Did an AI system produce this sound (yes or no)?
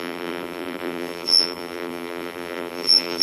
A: yes